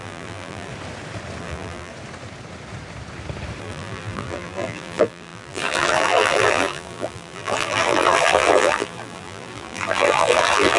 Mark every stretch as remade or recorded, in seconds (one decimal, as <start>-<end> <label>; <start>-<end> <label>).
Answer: 0.0-0.7 remade; 0.7-1.4 recorded; 1.4-1.9 remade; 1.9-3.6 recorded; 3.6-10.8 remade